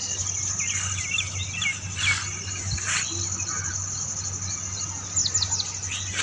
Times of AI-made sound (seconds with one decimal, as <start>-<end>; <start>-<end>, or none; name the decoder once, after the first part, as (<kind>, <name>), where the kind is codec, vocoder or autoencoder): none